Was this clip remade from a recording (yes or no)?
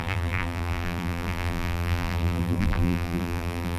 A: yes